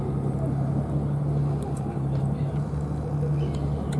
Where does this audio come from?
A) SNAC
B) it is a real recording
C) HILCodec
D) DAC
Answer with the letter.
B